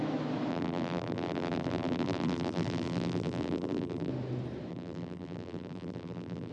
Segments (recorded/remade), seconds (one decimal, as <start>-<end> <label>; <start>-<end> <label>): 0.0-0.5 recorded; 0.5-4.1 remade; 4.1-4.7 recorded; 4.7-6.5 remade